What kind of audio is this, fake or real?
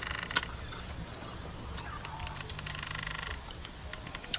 real